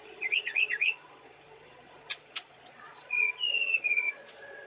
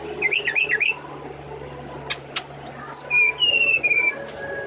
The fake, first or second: first